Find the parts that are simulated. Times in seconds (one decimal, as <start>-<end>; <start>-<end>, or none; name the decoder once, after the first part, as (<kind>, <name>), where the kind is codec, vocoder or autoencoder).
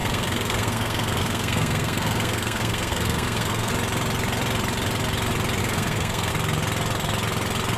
0.0-3.7 (codec, SNAC); 5.6-6.3